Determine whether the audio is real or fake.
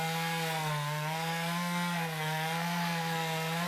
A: fake